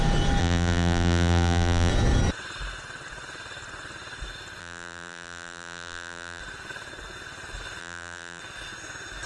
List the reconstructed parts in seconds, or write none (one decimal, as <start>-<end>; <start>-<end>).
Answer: 0.4-1.9; 4.6-6.4; 7.8-8.4